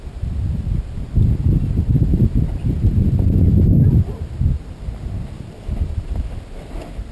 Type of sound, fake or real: fake